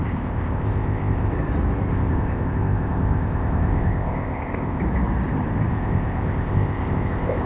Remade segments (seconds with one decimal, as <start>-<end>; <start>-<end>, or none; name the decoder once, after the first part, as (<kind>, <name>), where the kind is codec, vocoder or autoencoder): 0.0-1.3 (codec, ZipCodec); 1.9-4.8; 5.7-7.5